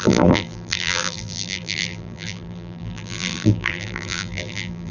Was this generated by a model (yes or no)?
yes